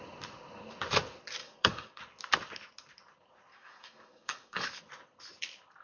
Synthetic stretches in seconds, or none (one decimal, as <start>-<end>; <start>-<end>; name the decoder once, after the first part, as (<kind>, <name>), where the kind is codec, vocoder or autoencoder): 1.4-2.0 (codec, DAC); 3.5-4.8